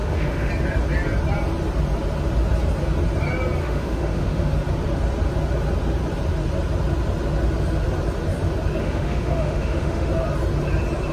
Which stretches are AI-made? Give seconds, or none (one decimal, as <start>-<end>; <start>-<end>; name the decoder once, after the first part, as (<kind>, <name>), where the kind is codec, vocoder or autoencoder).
0.0-0.5 (autoencoder, DAC-VAE); 3.6-4.5; 8.8-10.1